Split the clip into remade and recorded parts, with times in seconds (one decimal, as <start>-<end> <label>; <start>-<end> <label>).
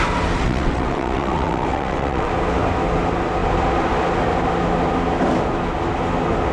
0.0-0.4 recorded; 0.4-2.3 remade; 2.3-6.5 recorded